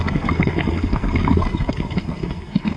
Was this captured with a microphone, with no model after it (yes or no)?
no